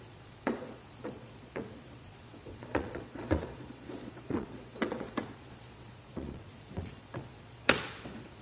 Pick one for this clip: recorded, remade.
remade